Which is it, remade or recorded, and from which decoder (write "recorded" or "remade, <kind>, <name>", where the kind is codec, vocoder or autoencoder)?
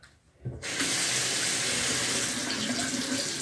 recorded